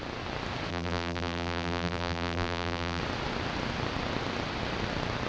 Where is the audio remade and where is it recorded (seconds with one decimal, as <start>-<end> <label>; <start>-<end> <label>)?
0.0-0.7 recorded; 0.7-3.0 remade; 3.0-5.3 recorded